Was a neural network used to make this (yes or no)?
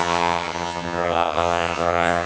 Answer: yes